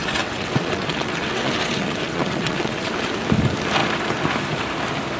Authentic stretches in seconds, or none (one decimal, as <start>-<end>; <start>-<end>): 3.1-5.2